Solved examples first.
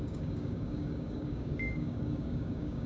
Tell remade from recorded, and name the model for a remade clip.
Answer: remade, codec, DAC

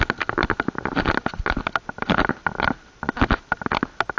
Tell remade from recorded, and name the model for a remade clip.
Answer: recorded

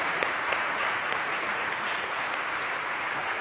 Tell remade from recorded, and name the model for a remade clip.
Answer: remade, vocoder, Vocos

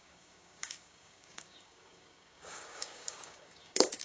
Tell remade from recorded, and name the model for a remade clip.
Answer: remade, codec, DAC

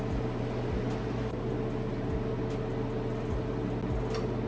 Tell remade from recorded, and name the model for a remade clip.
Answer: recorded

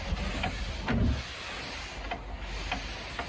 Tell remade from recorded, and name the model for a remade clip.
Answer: recorded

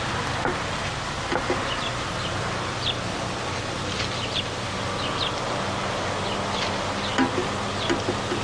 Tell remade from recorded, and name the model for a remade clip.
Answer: recorded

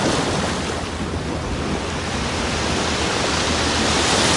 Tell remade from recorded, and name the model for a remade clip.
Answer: recorded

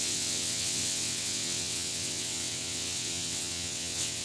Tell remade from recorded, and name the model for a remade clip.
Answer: remade, vocoder, WaveNeXt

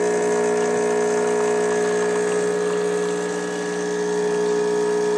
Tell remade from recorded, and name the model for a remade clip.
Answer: recorded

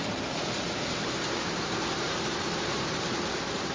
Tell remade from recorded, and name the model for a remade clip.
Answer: remade, vocoder, BigVGAN v2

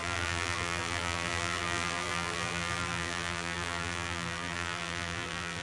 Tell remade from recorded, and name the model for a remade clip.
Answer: remade, vocoder, BigVGAN v2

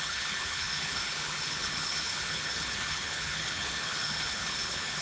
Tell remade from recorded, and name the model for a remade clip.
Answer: remade, codec, HILCodec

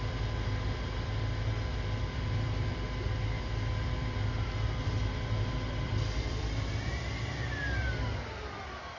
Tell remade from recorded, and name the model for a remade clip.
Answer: remade, vocoder, BigVGAN v2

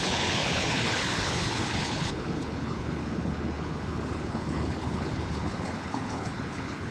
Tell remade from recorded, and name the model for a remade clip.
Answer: remade, codec, HILCodec